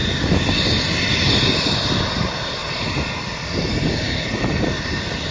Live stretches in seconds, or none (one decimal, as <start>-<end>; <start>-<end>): 0.0-1.3; 2.6-4.2